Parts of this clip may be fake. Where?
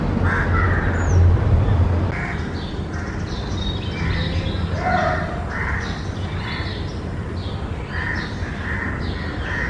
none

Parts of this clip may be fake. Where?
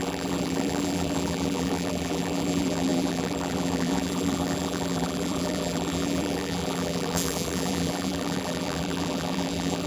0.0-9.9 (vocoder, BigVGAN v2)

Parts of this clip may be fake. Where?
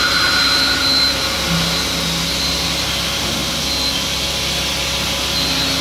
none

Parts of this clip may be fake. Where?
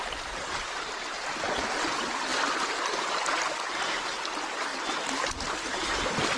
none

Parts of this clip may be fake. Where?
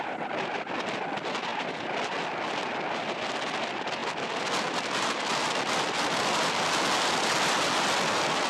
none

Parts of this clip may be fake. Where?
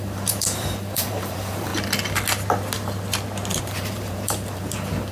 0.0-1.7 (vocoder, BigVGAN v2); 3.6-5.1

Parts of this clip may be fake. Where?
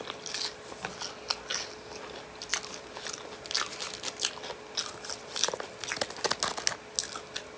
none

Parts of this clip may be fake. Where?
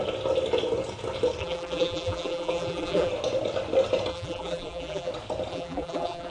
1.4-3.1 (vocoder, BigVGAN v2); 4.1-5.1; 5.5-6.3